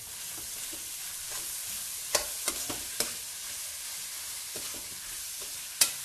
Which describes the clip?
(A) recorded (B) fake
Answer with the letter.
A